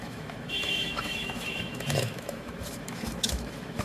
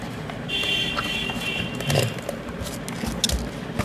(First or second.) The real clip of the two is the second